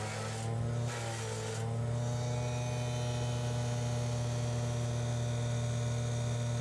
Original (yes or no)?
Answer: yes